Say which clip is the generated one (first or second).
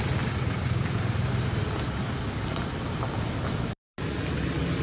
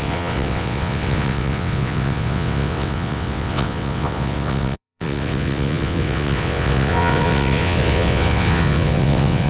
second